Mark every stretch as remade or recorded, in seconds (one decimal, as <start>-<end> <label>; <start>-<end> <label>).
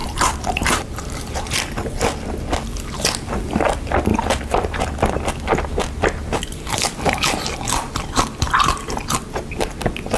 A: 0.0-1.6 remade; 1.6-4.1 recorded; 4.1-4.8 remade; 4.8-6.2 recorded; 6.2-6.9 remade; 6.9-10.2 recorded